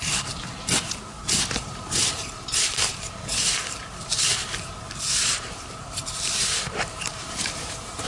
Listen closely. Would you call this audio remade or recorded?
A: remade